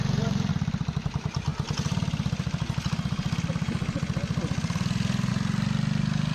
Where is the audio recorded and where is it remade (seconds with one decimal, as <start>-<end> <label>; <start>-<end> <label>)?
0.0-0.5 remade; 0.5-6.3 recorded